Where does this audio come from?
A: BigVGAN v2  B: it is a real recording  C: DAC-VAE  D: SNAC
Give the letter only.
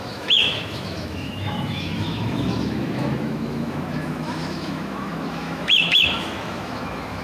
C